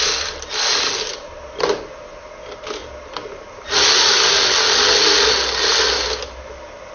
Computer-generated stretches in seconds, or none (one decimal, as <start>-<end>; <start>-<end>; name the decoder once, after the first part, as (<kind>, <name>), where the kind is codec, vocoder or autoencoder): none